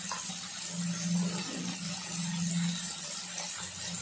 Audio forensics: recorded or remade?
recorded